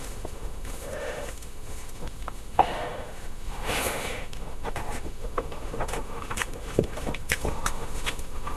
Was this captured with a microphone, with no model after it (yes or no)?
no